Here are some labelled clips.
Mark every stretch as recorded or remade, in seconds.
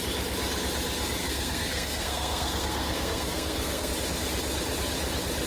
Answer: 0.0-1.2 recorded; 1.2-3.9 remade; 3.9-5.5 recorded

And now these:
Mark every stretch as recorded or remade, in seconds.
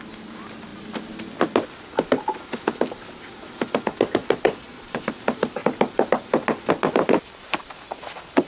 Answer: 0.0-4.2 recorded; 4.2-5.1 remade; 5.1-8.5 recorded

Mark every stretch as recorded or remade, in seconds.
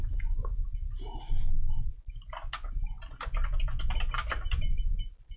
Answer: 0.0-0.6 remade; 0.6-3.8 recorded; 3.8-5.4 remade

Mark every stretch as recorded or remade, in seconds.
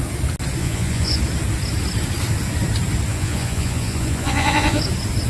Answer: 0.0-0.6 recorded; 0.6-1.2 remade; 1.2-3.1 recorded; 3.1-4.8 remade; 4.8-5.3 recorded